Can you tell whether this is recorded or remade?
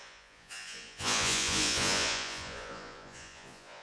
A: remade